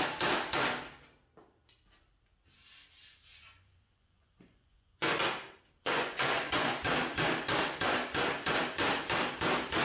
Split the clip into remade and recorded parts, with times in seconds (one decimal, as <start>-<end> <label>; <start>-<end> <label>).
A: 0.0-3.1 recorded; 3.1-5.2 remade; 5.2-5.8 recorded; 5.8-6.8 remade; 6.8-9.8 recorded